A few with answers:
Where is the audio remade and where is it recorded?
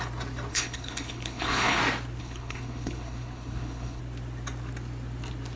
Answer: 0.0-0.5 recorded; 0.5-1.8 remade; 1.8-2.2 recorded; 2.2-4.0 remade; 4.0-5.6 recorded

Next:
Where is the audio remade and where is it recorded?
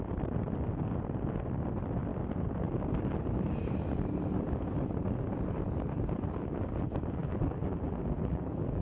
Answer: 0.0-7.2 recorded; 7.2-8.8 remade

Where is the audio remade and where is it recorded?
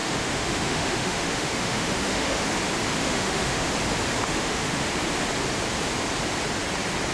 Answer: 0.0-2.4 remade; 2.4-3.0 recorded; 3.0-3.7 remade; 3.7-4.2 recorded; 4.2-4.9 remade; 4.9-7.1 recorded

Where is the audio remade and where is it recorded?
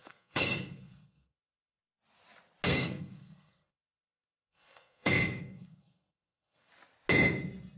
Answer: 0.0-1.8 remade; 1.8-2.7 recorded; 2.7-6.7 remade; 6.7-7.8 recorded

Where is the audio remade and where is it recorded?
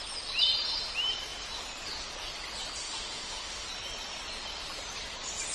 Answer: 0.0-2.8 recorded; 2.8-3.7 remade; 3.7-5.5 recorded